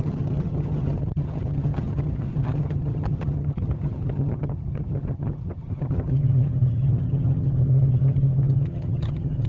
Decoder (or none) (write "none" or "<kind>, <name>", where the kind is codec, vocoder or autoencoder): vocoder, HiFi-GAN